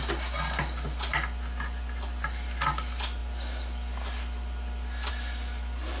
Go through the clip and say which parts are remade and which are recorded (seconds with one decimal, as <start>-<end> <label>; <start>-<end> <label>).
0.0-6.0 recorded